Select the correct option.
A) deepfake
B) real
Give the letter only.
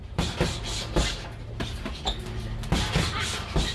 B